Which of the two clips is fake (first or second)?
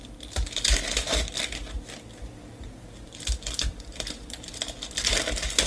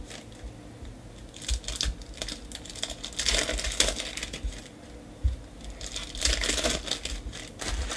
first